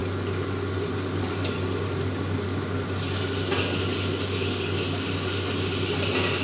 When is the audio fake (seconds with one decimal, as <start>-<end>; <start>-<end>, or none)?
none